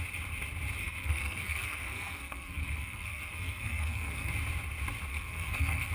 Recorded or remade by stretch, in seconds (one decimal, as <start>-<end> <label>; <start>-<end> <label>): 0.0-0.8 recorded; 0.8-4.3 remade; 4.3-5.1 recorded; 5.1-5.9 remade